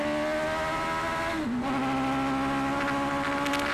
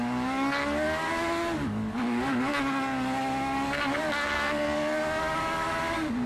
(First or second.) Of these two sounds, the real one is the first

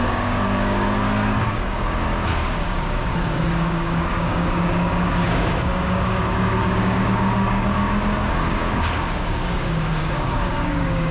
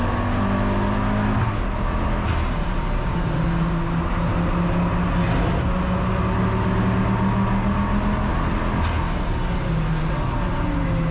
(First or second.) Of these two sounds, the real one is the second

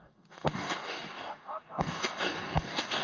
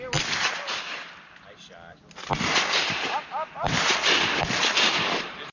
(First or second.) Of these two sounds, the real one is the second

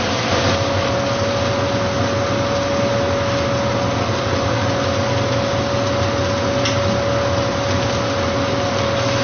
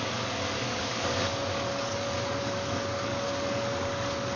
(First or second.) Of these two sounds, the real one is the first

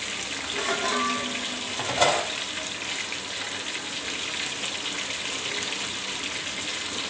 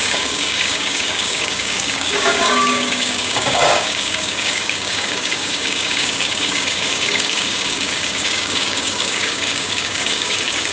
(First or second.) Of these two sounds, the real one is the first